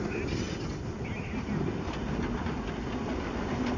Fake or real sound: real